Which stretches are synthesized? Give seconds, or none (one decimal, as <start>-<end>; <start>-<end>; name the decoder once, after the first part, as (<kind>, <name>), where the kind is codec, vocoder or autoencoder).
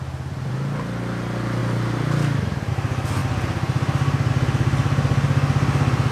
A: none